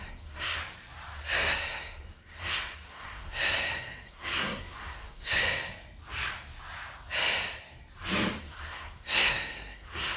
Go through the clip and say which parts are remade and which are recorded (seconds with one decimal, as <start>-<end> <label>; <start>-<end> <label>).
0.0-0.6 remade; 0.6-1.2 recorded; 1.2-5.4 remade; 5.4-8.4 recorded; 8.4-10.2 remade